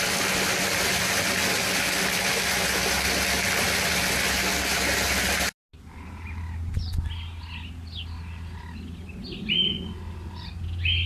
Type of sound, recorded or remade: recorded